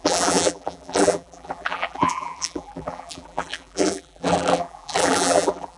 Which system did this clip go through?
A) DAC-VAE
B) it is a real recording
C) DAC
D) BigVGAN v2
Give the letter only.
D